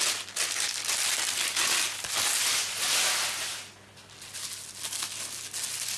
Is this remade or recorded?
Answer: recorded